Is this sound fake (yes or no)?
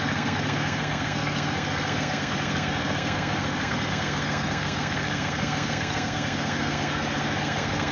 yes